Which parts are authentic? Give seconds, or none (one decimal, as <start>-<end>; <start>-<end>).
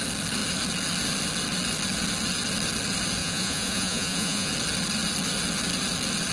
0.0-3.2; 4.5-6.3